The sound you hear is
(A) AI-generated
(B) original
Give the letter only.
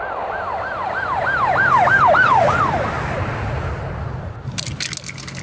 B